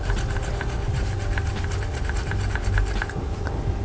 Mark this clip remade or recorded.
recorded